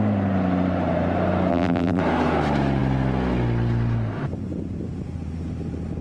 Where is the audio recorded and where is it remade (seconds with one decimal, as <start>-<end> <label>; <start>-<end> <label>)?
0.0-1.5 recorded; 1.5-2.0 remade; 2.0-6.0 recorded